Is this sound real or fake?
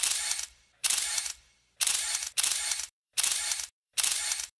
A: fake